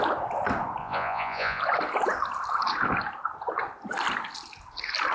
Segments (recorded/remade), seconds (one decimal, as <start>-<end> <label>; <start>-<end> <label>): 0.0-0.8 recorded; 0.8-1.6 remade; 1.6-5.1 recorded